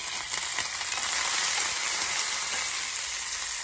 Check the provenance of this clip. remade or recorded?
recorded